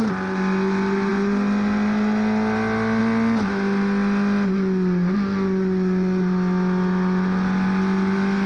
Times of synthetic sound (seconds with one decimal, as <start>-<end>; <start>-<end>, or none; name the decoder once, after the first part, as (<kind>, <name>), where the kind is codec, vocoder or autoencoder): none